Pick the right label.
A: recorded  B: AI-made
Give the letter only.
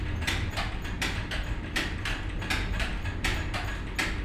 A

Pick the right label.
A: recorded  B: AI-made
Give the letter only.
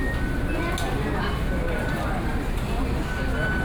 A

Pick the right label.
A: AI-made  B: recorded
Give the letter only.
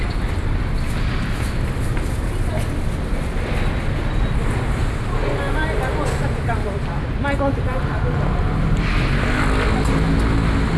B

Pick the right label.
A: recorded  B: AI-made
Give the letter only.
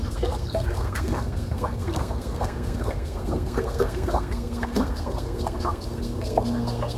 B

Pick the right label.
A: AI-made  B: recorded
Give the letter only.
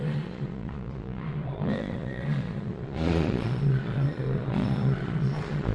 A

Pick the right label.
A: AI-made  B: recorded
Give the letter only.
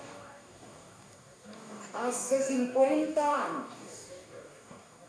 A